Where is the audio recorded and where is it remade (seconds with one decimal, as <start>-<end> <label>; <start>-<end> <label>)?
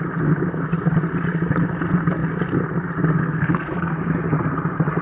0.0-3.2 recorded; 3.2-3.9 remade; 3.9-5.0 recorded